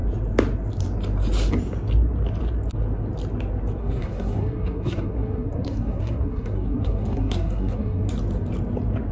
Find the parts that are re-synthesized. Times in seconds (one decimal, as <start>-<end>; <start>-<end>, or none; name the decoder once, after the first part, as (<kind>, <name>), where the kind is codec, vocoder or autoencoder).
3.8-8.1 (codec, SNAC)